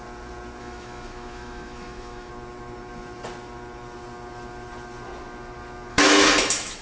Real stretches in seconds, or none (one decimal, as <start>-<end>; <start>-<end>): 0.0-0.6; 2.3-5.9